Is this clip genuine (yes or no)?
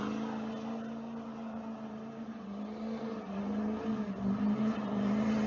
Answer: yes